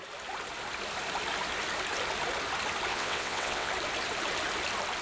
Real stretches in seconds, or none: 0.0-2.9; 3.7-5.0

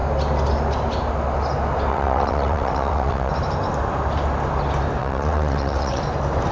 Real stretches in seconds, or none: 0.0-1.9; 3.3-5.0; 6.0-6.5

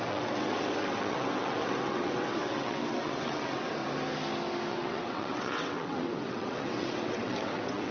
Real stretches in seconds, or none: 3.8-4.7

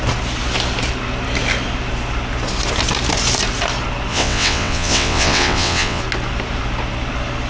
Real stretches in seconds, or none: 0.0-4.1; 6.0-7.5

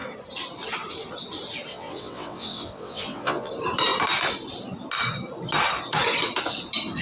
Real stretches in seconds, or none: 0.0-1.7; 3.5-7.0

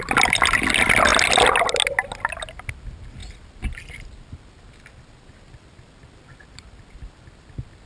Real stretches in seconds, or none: 0.0-7.9